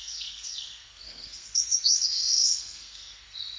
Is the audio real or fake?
fake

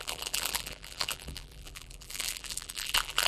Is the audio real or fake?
fake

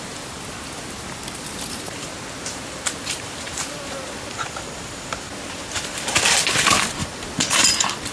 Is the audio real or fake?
fake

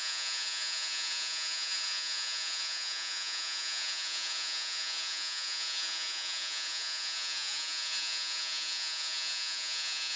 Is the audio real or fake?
fake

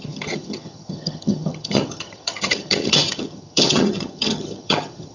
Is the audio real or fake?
fake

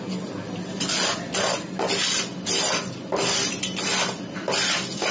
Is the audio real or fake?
real